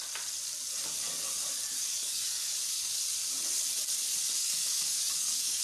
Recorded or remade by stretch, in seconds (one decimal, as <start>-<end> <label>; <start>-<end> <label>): 0.0-1.8 recorded; 1.8-2.9 remade; 2.9-4.4 recorded; 4.4-5.6 remade